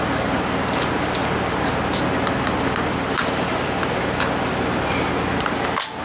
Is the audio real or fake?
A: real